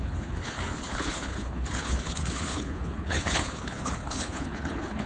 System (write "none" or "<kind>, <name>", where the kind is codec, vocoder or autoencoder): codec, HILCodec